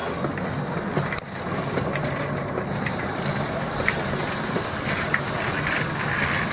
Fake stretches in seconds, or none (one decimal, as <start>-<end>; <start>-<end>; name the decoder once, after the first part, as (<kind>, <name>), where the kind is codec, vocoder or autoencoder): none

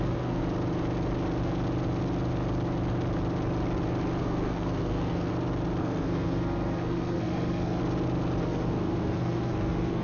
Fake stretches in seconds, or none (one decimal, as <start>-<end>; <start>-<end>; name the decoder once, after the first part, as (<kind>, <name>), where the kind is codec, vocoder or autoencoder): 0.0-0.4 (codec, SNAC); 4.2-5.3; 5.8-7.8; 8.4-10.0